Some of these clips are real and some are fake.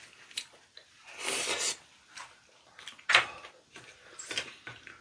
real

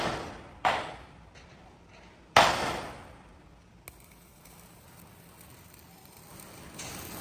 real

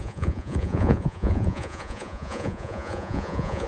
fake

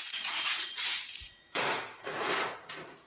fake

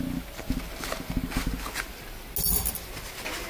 real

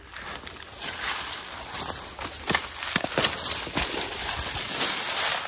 real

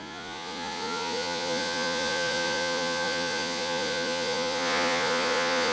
fake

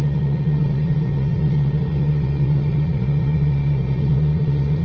fake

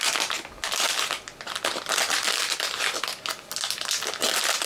real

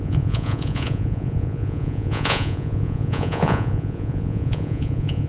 fake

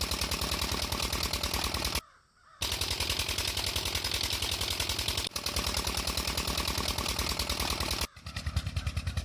real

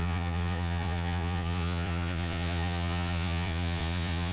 fake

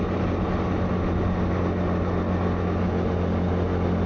real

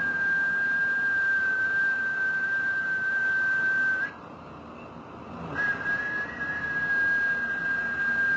real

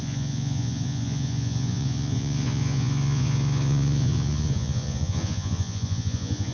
fake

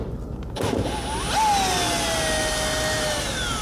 real